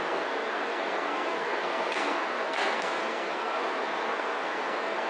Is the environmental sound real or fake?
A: fake